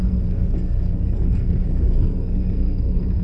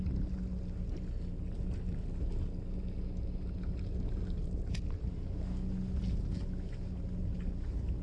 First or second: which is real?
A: second